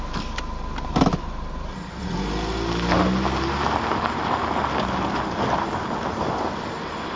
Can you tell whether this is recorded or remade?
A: recorded